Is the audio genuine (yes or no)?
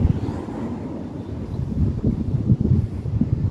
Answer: yes